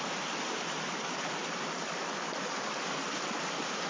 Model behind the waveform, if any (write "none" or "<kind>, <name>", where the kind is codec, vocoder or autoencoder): none